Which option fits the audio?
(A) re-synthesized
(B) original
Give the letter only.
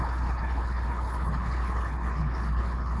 A